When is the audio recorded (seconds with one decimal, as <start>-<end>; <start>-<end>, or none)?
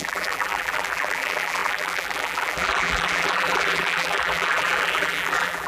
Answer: none